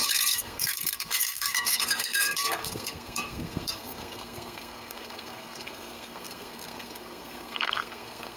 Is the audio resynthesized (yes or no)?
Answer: yes